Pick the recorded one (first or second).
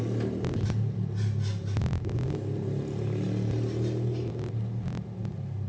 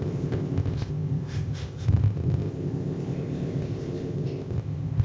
first